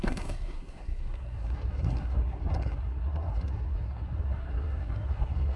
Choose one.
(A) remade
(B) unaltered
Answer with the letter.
A